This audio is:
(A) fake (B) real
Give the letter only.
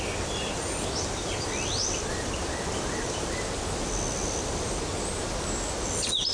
B